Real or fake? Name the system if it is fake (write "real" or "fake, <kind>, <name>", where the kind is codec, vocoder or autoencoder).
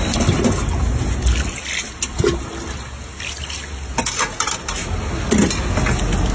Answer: real